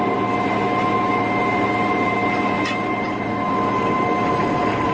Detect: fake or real real